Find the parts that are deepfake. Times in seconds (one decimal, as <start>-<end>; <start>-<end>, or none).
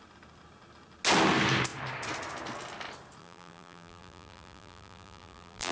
3.2-5.7